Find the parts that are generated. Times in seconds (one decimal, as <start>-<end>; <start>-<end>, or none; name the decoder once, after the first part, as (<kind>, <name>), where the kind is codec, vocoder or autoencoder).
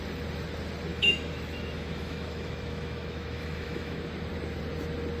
0.9-4.0 (autoencoder, DAC-VAE)